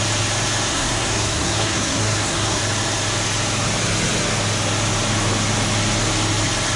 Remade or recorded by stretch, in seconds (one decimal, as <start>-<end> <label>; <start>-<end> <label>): 0.0-0.7 recorded; 0.7-2.6 remade; 2.6-6.8 recorded